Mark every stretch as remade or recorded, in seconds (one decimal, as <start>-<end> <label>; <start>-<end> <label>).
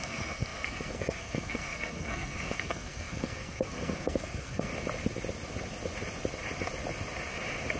0.0-4.7 remade; 4.7-7.8 recorded